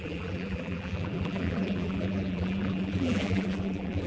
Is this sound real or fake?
fake